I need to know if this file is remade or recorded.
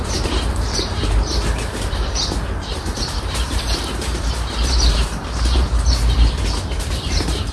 remade